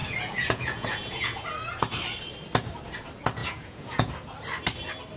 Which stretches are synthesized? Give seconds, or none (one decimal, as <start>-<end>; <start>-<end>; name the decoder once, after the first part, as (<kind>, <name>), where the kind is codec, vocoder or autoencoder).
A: 0.0-1.4 (vocoder, Vocos); 3.4-4.1